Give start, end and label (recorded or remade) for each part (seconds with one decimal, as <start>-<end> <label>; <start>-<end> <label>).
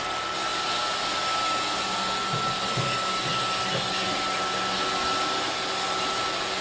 0.0-6.6 recorded